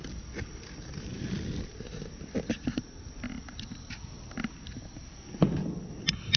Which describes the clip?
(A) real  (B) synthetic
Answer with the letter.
A